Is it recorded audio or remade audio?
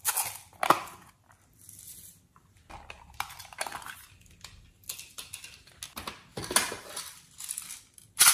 recorded